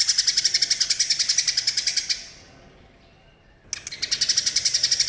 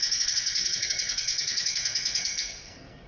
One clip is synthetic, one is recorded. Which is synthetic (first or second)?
second